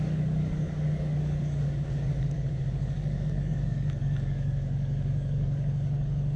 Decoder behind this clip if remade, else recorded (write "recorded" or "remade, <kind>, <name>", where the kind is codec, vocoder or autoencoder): remade, codec, DAC